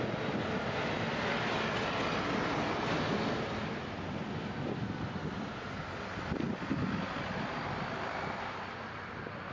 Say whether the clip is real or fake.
real